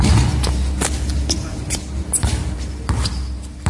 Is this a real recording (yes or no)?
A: yes